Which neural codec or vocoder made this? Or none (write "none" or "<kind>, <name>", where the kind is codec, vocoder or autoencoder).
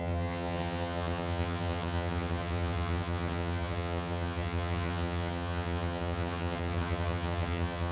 vocoder, HiFi-GAN